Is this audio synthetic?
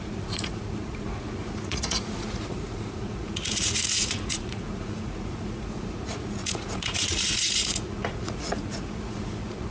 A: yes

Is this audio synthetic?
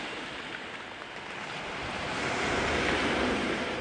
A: yes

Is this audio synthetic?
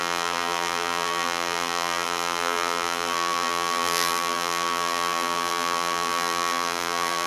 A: yes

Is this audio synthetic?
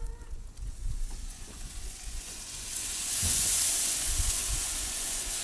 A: yes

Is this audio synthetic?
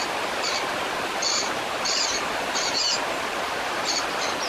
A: no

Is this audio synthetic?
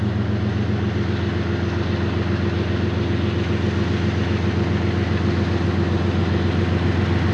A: no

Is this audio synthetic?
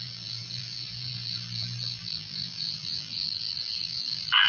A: yes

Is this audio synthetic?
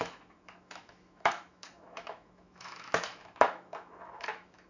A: yes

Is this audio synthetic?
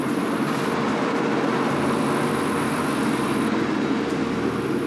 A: yes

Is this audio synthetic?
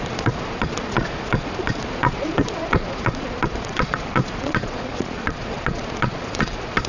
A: yes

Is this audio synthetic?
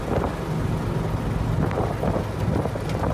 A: no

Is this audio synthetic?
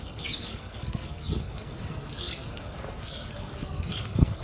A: yes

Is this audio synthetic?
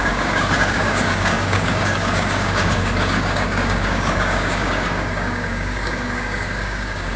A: yes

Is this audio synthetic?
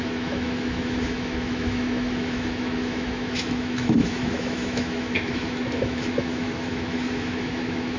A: yes